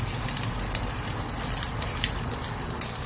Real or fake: real